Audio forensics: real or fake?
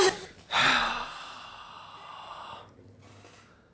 real